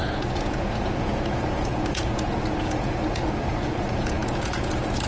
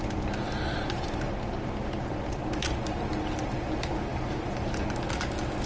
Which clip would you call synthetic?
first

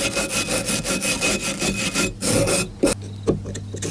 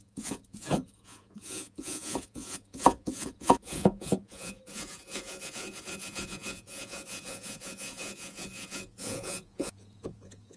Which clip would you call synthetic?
second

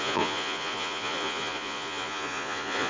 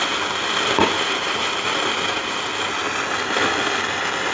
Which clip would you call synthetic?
first